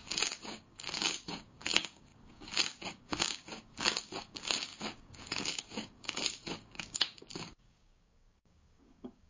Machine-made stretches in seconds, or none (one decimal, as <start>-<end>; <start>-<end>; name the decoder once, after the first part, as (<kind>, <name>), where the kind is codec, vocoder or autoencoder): 0.0-9.3 (codec, DAC)